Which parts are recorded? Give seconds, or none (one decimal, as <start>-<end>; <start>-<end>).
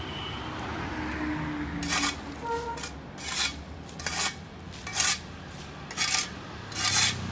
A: 0.0-7.3